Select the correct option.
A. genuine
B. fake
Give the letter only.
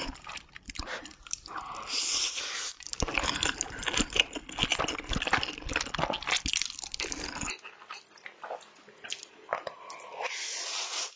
A